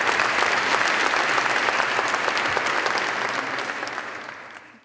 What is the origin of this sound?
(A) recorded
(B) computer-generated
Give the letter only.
A